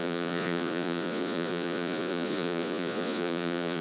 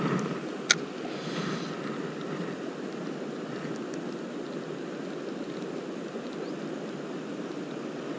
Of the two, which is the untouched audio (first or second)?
second